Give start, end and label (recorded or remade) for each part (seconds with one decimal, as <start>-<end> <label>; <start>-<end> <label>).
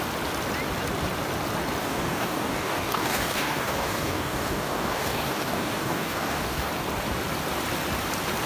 0.0-1.8 recorded; 1.8-6.7 remade; 6.7-8.5 recorded